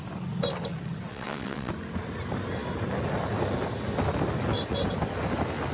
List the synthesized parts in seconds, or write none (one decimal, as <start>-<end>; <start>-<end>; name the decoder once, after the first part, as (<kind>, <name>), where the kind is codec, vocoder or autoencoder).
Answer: 1.1-1.7 (vocoder, WaveNeXt)